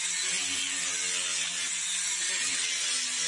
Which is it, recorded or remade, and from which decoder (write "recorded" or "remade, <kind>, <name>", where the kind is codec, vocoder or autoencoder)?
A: recorded